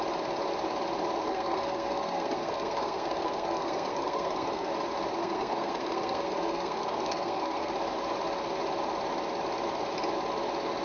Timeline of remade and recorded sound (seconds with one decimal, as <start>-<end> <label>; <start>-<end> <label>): 0.0-1.3 recorded; 1.3-4.7 remade; 4.7-5.2 recorded; 5.2-7.7 remade; 7.7-10.8 recorded